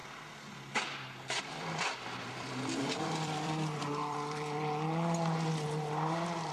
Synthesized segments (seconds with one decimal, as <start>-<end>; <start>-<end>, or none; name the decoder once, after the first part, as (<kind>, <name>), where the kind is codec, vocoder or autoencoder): 1.4-6.5 (vocoder, BigVGAN v2)